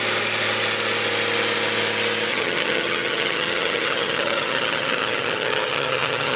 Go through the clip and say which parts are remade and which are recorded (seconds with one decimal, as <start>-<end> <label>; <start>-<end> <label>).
0.0-2.3 recorded; 2.3-6.4 remade